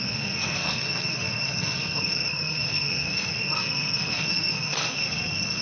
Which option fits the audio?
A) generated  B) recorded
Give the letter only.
A